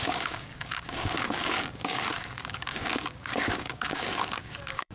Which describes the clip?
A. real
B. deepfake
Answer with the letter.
B